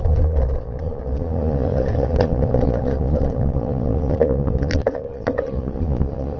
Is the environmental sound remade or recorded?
remade